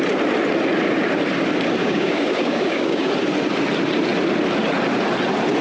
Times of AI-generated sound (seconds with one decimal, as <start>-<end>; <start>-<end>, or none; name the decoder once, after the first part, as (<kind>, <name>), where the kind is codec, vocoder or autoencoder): 1.8-3.1 (codec, DAC)